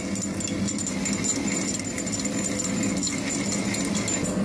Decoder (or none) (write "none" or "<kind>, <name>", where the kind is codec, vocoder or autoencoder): none